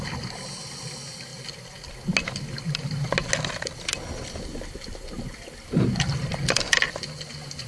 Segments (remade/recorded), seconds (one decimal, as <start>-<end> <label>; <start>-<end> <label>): 0.0-7.7 recorded